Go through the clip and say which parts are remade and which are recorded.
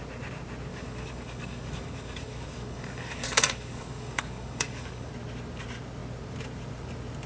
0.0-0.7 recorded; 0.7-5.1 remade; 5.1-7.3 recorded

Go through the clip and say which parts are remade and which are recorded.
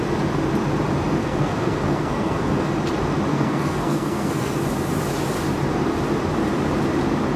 0.0-1.2 recorded; 1.2-2.7 remade; 2.7-3.3 recorded; 3.3-4.6 remade; 4.6-7.4 recorded